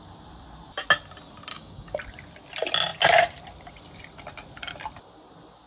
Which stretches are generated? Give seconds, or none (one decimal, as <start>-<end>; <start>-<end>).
1.5-2.0

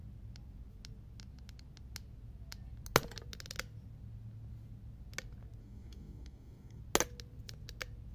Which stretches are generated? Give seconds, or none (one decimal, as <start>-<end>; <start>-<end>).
5.6-6.8

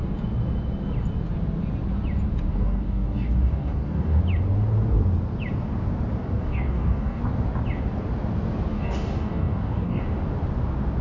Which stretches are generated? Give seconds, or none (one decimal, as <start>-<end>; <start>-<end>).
2.5-4.2; 6.2-7.2; 8.7-10.0

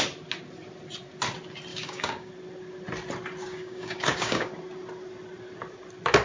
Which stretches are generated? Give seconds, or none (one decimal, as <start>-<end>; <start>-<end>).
1.7-2.3; 3.4-4.5